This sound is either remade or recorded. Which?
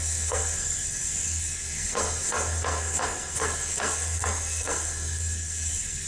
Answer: remade